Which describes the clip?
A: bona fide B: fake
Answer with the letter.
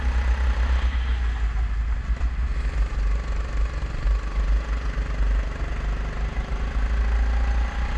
A